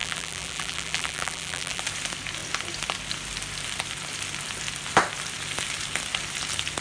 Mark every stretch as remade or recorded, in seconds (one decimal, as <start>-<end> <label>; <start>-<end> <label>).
0.0-1.8 remade; 1.8-6.8 recorded